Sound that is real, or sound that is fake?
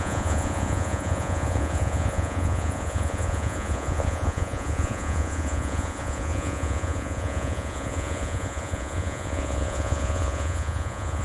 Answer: fake